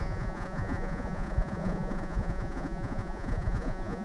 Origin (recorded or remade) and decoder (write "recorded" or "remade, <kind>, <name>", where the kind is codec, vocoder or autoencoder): remade, vocoder, Vocos